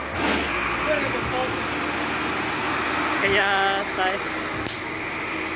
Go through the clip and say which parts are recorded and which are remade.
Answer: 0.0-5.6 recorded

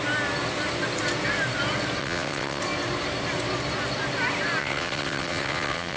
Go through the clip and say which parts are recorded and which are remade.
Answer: 0.0-2.0 recorded; 2.0-2.6 remade; 2.6-4.6 recorded; 4.6-6.0 remade

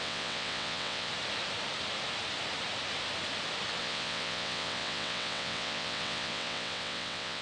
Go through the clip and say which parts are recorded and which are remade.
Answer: 0.0-1.1 remade; 1.1-3.8 recorded; 3.8-7.4 remade

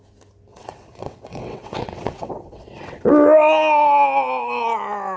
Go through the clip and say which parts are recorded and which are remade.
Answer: 0.0-0.5 recorded; 0.5-3.1 remade; 3.1-5.2 recorded

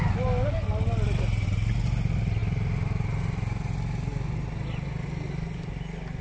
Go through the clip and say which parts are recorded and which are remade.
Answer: 0.0-6.2 recorded

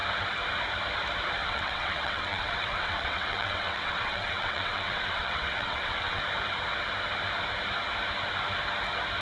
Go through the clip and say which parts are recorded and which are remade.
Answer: 0.0-1.4 recorded; 1.4-6.2 remade; 6.2-9.2 recorded

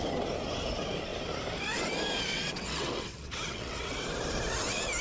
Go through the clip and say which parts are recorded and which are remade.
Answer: 0.0-2.3 recorded; 2.3-4.1 remade; 4.1-5.0 recorded

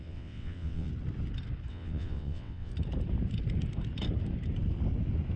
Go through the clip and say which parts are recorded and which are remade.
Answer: 0.0-0.9 remade; 0.9-1.7 recorded; 1.7-2.7 remade; 2.7-5.4 recorded